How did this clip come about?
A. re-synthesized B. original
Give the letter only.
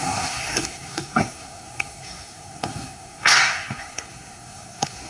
A